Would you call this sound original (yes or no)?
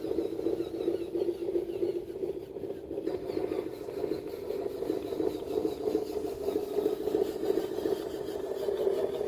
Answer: yes